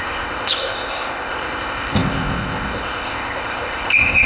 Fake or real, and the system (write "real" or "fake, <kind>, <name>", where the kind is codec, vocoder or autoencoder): fake, codec, ZipCodec